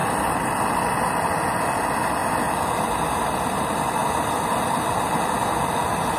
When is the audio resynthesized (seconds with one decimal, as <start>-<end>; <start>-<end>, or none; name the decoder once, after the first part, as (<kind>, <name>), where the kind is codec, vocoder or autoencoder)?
4.0-4.5 (vocoder, BigVGAN v2)